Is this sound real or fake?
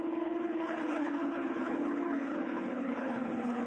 fake